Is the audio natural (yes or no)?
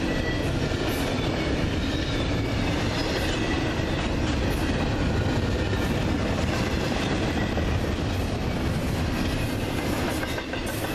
yes